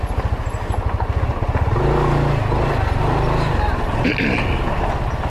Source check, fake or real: real